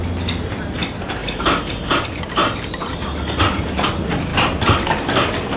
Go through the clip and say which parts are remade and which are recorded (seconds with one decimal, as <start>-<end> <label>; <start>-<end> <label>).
0.0-2.4 recorded; 2.4-3.0 remade; 3.0-4.3 recorded; 4.3-5.6 remade